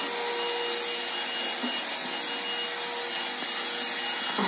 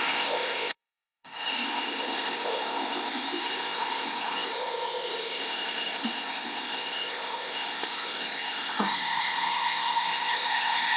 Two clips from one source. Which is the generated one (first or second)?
second